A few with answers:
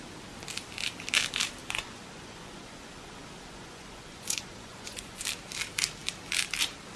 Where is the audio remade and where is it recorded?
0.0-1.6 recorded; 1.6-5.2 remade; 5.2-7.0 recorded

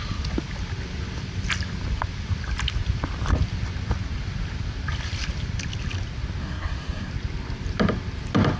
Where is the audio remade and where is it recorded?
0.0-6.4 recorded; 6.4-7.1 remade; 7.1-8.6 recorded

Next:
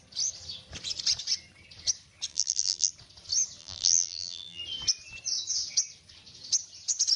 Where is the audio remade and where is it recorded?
0.0-2.3 recorded; 2.3-2.9 remade; 2.9-3.6 recorded; 3.6-4.6 remade; 4.6-7.2 recorded

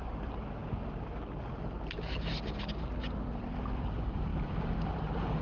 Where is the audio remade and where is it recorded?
0.0-0.6 remade; 0.6-3.8 recorded; 3.8-4.3 remade; 4.3-4.8 recorded; 4.8-5.4 remade

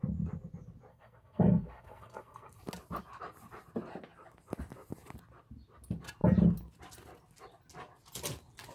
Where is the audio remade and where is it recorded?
0.0-0.9 recorded; 0.9-2.6 remade; 2.6-8.7 recorded